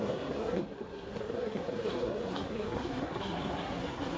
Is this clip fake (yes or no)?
yes